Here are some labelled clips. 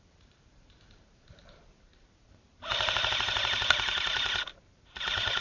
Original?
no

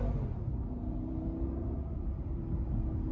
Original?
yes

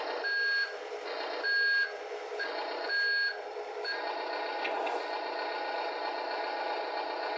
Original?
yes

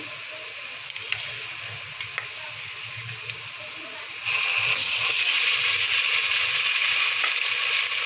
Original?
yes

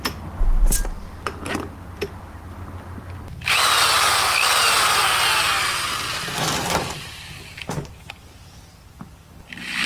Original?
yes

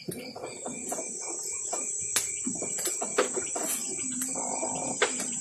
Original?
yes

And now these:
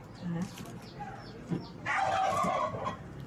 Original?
yes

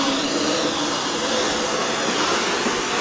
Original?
yes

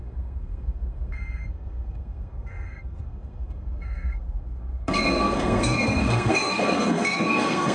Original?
no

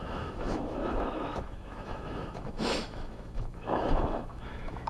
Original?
no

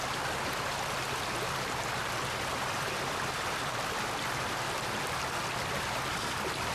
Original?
yes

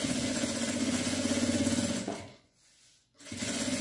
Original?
no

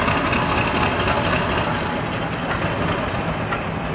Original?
yes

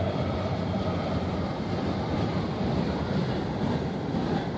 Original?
no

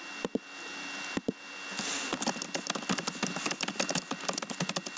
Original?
yes